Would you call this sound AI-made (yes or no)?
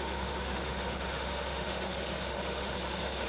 yes